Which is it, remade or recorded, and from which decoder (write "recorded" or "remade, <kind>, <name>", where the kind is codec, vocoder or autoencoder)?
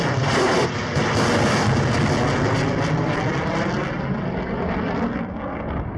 recorded